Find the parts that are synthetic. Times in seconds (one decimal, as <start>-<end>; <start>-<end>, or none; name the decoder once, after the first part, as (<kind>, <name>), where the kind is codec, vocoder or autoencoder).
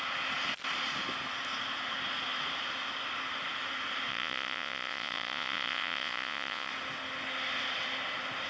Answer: 4.1-6.7 (vocoder, Vocos)